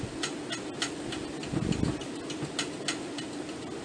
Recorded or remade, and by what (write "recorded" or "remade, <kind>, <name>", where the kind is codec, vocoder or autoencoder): recorded